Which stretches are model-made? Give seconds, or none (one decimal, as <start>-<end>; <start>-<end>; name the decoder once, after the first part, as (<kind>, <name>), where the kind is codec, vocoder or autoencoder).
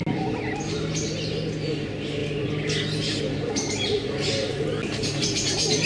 none